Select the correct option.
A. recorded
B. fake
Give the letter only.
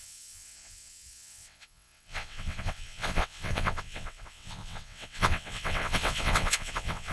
B